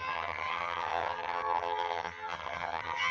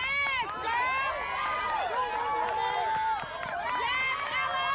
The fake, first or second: first